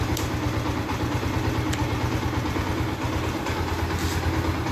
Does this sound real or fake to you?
real